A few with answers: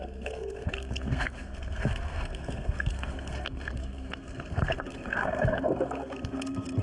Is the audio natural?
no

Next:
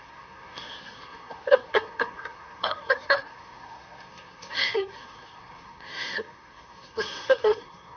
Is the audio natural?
no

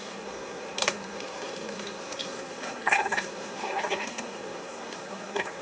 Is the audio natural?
no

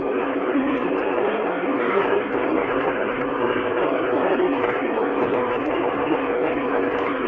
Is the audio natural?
no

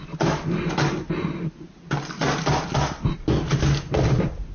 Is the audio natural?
yes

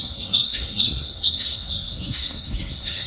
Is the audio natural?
no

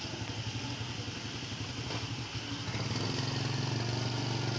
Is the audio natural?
yes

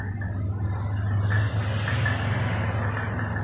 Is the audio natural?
yes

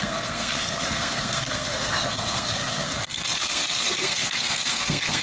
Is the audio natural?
no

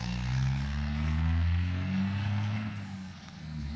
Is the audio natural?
no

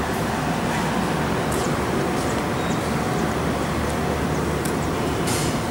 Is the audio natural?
yes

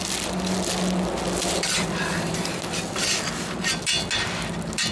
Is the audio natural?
yes